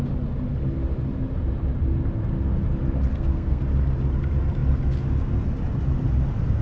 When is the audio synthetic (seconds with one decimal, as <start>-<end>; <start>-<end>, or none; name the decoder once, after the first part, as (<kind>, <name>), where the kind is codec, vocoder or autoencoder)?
3.1-3.6 (codec, SNAC)